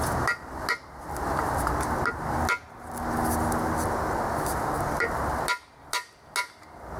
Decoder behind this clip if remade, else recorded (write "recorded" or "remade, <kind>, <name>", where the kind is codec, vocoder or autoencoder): recorded